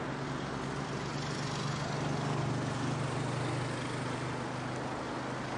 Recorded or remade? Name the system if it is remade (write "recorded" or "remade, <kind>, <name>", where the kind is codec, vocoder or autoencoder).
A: recorded